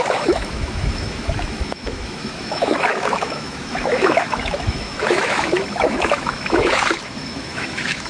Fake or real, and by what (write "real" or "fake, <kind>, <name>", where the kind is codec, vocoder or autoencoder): fake, autoencoder, DAC-VAE